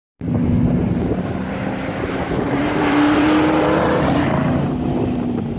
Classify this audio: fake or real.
fake